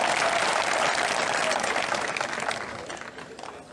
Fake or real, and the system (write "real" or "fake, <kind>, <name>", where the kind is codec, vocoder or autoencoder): real